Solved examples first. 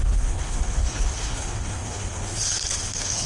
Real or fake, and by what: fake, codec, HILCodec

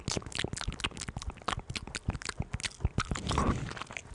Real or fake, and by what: real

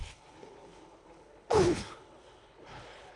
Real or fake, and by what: fake, codec, HILCodec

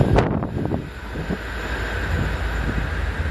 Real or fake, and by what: real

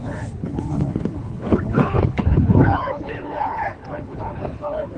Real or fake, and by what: fake, codec, HILCodec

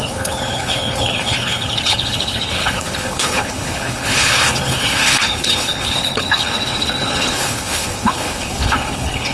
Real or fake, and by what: fake, codec, HILCodec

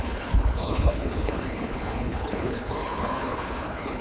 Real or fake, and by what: fake, codec, HILCodec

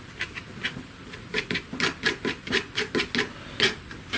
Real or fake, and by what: real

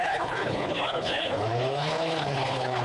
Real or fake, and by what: fake, codec, HILCodec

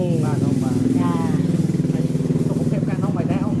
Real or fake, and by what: real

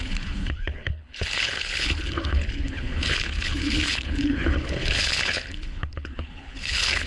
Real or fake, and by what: fake, codec, HILCodec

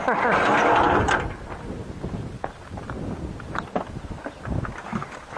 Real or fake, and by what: real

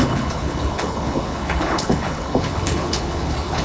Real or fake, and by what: fake, codec, HILCodec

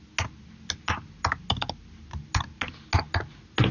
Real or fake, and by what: real